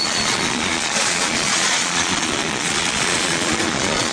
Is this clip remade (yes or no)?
yes